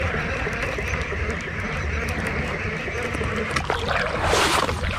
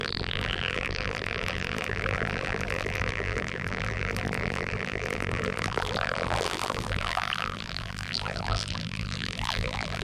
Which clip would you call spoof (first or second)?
second